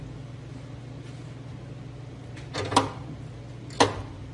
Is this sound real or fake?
real